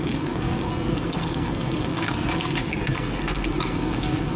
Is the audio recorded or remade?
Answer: remade